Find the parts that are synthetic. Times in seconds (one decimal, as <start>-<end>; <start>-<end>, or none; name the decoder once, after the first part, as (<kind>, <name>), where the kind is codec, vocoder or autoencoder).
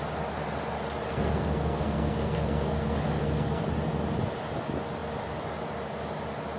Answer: 1.1-3.6 (codec, SNAC)